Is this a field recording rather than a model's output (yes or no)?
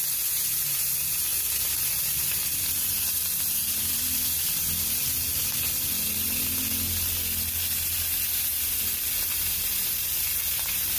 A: yes